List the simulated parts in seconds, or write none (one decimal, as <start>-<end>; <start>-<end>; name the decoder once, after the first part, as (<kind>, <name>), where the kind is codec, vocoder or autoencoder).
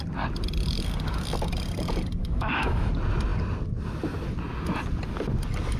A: 2.2-2.9 (autoencoder, DAC-VAE)